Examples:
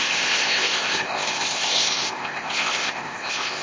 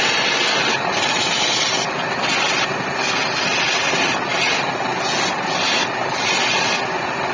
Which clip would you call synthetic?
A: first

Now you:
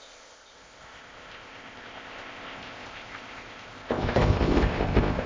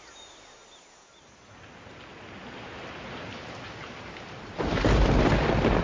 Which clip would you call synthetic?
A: first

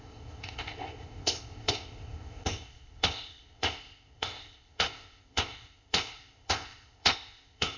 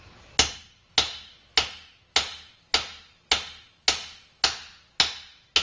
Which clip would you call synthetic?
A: first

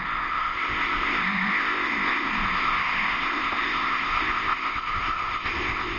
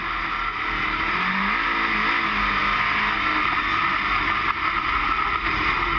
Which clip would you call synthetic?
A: first